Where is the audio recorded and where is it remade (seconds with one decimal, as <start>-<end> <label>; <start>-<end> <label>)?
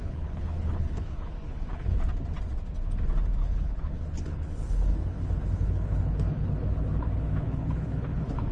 0.0-2.0 remade; 2.0-3.4 recorded; 3.4-8.5 remade